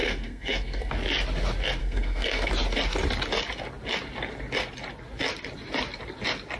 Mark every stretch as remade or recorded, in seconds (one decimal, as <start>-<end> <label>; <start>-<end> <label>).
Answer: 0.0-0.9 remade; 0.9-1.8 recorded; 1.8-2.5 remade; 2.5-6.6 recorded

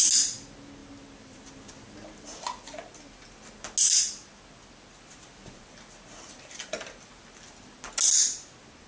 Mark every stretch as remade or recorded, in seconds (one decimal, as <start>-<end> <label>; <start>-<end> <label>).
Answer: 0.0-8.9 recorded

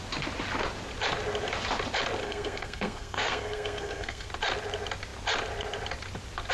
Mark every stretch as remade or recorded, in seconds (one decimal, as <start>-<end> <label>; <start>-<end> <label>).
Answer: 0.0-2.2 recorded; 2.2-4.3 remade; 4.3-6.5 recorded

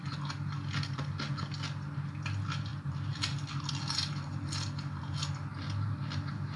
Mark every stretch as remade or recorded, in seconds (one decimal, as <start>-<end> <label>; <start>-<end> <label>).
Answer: 0.0-6.6 recorded

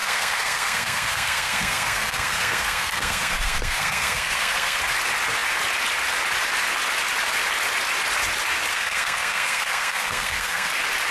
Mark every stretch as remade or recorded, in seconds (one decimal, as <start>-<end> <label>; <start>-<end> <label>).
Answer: 0.0-4.8 remade; 4.8-8.7 recorded; 8.7-10.7 remade; 10.7-11.1 recorded

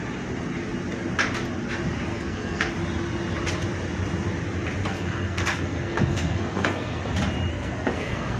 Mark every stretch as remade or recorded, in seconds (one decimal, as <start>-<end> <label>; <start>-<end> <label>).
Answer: 0.0-2.1 recorded; 2.1-2.7 remade; 2.7-4.8 recorded; 4.8-7.0 remade; 7.0-7.5 recorded; 7.5-8.4 remade

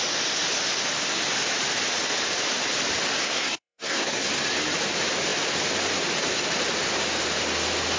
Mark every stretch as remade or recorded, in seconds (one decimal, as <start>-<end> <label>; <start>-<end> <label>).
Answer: 0.0-3.2 recorded; 3.2-4.3 remade; 4.3-8.0 recorded